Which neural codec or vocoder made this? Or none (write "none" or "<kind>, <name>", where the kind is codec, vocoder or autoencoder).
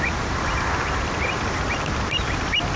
none